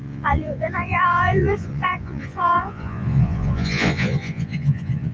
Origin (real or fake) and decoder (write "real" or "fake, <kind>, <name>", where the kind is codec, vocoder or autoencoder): fake, vocoder, Vocos